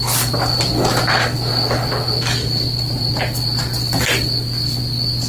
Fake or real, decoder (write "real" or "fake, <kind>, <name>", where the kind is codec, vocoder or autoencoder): real